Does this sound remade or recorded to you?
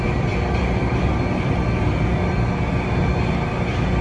recorded